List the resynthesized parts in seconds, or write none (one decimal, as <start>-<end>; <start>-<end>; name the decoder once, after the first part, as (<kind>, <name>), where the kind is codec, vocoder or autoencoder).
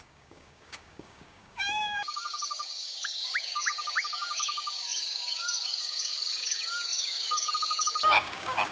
0.0-8.7 (codec, DAC)